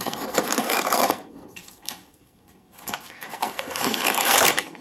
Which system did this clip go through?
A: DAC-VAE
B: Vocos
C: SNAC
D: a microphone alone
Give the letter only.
C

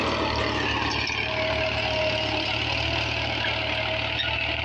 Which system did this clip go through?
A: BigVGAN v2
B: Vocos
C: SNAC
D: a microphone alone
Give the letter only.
D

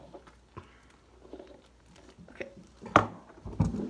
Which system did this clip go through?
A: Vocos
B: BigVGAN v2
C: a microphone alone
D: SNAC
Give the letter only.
C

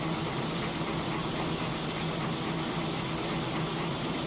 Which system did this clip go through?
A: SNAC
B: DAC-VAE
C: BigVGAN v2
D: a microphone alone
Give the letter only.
D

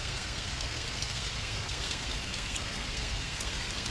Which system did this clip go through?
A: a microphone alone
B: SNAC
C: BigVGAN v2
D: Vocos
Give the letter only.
B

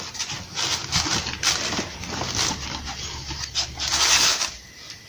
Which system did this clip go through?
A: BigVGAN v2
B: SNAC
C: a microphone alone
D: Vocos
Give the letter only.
C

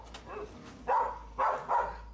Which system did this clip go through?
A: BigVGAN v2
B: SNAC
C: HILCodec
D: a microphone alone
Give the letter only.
D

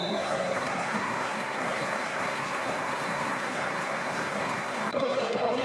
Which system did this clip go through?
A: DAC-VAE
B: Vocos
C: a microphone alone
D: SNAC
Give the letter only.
D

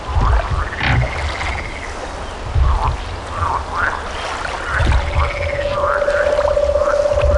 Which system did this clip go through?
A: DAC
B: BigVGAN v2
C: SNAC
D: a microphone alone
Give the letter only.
D